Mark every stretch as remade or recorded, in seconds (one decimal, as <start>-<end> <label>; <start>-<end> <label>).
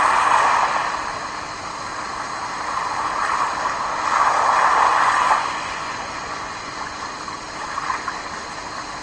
0.0-4.9 recorded; 4.9-7.1 remade; 7.1-9.0 recorded